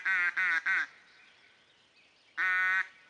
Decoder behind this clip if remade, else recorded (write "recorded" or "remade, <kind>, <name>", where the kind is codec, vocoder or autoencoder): recorded